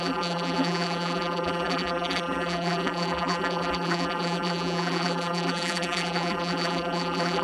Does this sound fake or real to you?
fake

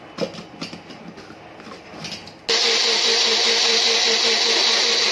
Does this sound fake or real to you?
real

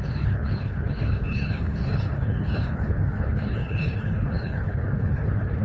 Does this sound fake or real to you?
fake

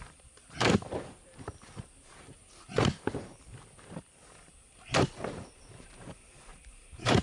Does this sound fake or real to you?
fake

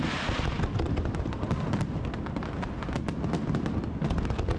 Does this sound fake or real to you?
real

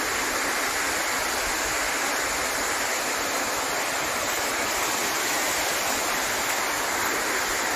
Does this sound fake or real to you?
real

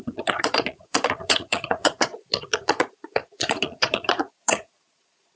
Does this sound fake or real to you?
fake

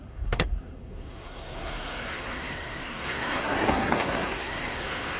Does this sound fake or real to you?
fake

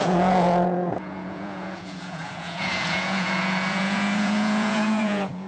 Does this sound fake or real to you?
fake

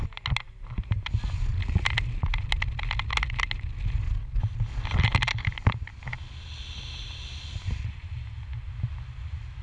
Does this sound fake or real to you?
real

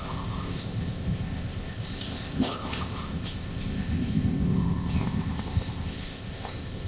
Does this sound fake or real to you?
fake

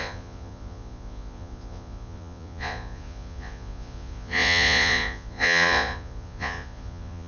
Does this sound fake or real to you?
fake